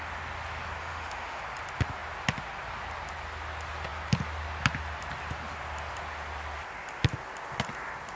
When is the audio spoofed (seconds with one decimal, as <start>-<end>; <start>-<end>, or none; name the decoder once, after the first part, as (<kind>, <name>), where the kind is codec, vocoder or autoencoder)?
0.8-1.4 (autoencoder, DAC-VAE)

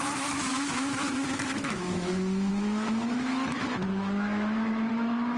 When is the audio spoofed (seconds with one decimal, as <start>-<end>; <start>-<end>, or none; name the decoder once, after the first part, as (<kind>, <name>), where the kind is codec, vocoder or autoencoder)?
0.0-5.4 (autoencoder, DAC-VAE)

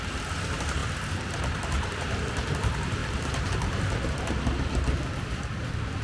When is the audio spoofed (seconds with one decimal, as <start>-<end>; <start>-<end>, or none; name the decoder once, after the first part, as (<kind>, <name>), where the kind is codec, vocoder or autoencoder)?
0.0-3.0 (vocoder, BigVGAN v2); 4.2-6.0

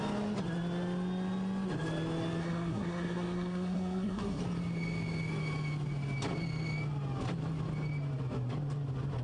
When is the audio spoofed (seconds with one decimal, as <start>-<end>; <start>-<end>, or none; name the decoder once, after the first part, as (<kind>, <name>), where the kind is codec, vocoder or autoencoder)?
2.4-4.4 (codec, SNAC)

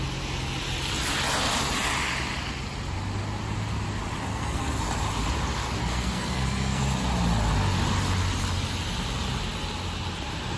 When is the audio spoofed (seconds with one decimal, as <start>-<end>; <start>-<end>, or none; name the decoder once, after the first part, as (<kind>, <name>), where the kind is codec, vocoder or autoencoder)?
4.3-4.8 (codec, SNAC); 5.8-6.8